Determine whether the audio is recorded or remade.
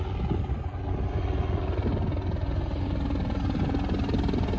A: recorded